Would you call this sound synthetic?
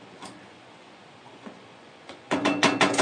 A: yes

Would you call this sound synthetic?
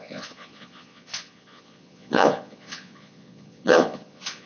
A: yes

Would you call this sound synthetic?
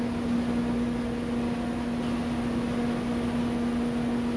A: no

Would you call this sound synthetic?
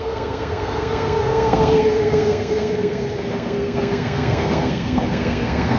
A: yes